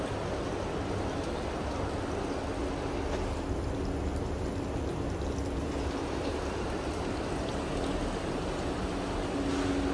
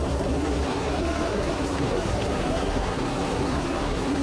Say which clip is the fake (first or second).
second